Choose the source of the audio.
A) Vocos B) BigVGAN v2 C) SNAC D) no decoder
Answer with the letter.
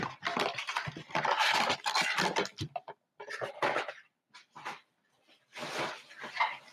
D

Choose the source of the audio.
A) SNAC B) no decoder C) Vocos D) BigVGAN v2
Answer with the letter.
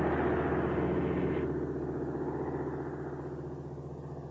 B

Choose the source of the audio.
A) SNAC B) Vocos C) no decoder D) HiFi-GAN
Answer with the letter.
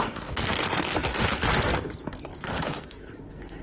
A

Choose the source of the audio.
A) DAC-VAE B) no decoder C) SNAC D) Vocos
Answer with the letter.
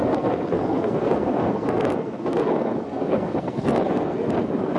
C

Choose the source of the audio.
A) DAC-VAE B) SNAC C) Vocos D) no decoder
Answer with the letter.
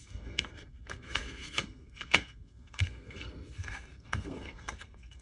B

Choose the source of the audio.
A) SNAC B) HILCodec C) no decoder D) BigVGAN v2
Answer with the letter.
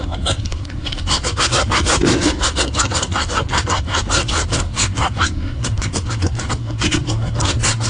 A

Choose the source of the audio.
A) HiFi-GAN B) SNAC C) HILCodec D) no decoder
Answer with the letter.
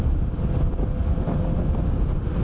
D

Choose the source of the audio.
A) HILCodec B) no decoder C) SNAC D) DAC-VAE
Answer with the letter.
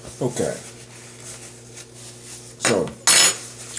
B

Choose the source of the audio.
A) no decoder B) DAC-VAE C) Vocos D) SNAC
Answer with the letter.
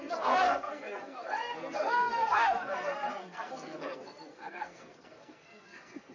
D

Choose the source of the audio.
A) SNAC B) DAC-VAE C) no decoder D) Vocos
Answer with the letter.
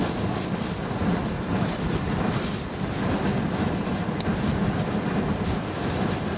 C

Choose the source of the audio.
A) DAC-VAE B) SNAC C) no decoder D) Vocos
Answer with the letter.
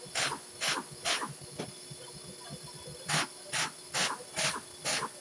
C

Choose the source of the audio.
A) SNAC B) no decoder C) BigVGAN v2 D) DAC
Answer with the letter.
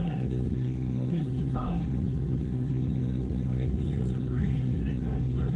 A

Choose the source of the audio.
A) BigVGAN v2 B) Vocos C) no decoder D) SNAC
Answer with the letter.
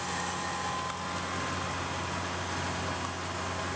C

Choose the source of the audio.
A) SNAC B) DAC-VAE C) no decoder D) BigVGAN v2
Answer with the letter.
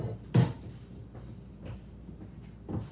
C